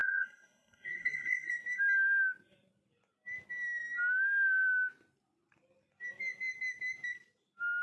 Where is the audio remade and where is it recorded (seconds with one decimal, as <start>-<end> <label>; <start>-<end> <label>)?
0.0-1.5 remade; 1.5-7.8 recorded